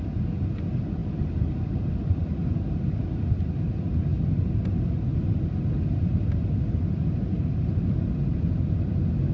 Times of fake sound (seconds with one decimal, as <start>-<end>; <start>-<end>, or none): none